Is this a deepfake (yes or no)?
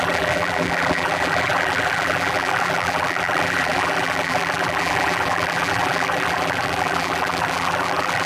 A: yes